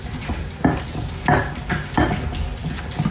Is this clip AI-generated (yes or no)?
no